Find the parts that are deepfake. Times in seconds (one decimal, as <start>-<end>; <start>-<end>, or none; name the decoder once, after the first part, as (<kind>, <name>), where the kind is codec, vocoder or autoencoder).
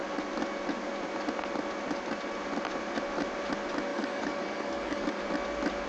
3.9-5.2 (codec, DAC)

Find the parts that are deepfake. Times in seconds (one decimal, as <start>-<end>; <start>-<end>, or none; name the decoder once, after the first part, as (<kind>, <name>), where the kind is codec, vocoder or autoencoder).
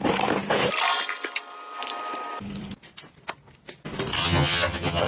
4.2-5.1 (vocoder, HiFi-GAN)